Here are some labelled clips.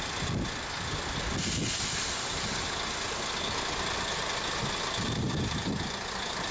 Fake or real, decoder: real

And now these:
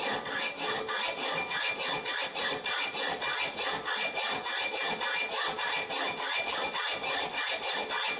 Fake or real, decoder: real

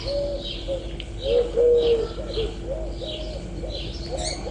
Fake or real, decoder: real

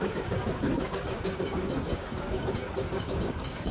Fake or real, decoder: fake, codec, DAC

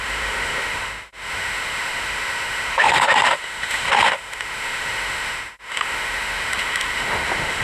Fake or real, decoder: fake, autoencoder, DAC-VAE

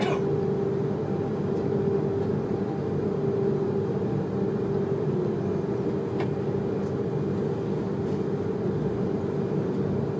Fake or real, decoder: real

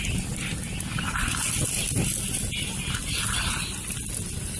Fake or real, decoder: real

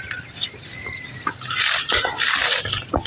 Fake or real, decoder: real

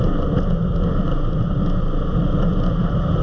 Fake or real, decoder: real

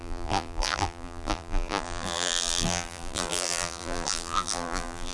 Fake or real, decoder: fake, vocoder, BigVGAN v2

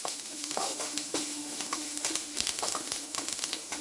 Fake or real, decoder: fake, autoencoder, DAC-VAE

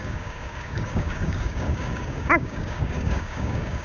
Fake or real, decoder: fake, codec, DAC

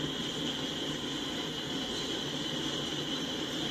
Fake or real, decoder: real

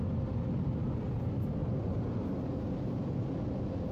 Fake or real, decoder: real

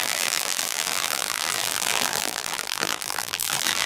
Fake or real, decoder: fake, vocoder, BigVGAN v2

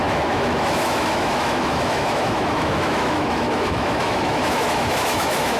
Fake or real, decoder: fake, autoencoder, DAC-VAE